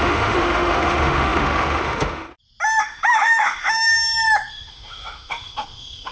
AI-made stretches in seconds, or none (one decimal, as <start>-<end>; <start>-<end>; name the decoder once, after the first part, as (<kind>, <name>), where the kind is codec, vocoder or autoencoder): 0.0-2.3 (autoencoder, DAC-VAE); 2.8-3.9; 4.5-6.1